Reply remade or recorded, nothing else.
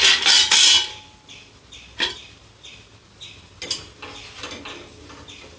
recorded